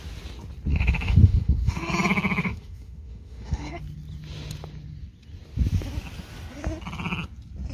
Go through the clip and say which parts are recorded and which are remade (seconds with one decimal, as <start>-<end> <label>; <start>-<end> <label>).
0.0-0.7 recorded; 0.7-1.9 remade; 1.9-2.4 recorded; 2.4-3.8 remade; 3.8-7.7 recorded